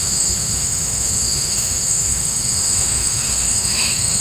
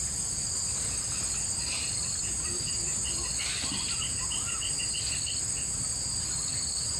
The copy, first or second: first